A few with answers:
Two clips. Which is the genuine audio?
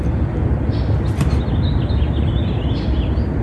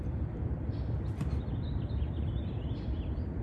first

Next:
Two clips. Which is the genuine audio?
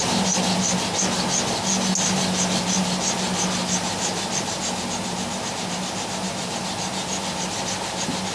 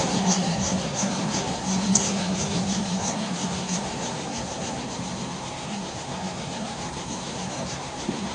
first